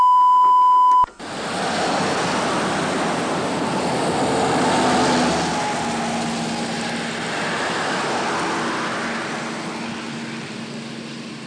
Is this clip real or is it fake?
real